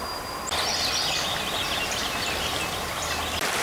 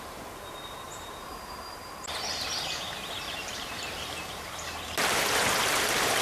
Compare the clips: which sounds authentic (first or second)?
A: first